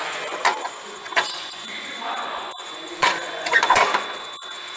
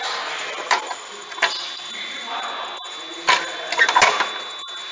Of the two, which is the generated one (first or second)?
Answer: first